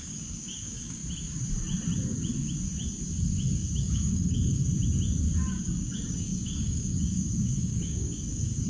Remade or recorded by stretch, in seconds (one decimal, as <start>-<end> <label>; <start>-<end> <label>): 0.0-1.0 remade; 1.0-3.8 recorded; 3.8-4.6 remade; 4.6-5.5 recorded; 5.5-8.7 remade